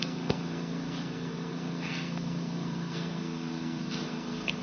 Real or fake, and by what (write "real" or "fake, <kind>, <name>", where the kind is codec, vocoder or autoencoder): fake, codec, SNAC